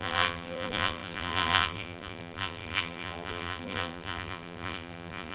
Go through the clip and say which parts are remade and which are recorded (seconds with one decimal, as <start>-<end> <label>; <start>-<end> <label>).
0.0-5.3 remade

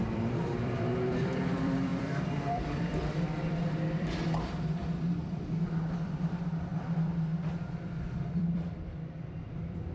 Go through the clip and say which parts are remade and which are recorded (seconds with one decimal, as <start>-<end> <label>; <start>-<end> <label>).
0.0-4.8 remade; 4.8-6.0 recorded; 6.0-6.7 remade; 6.7-7.5 recorded; 7.5-9.9 remade

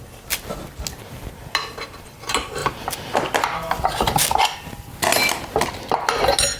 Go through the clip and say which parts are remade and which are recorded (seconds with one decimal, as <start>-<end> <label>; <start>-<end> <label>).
0.0-6.6 recorded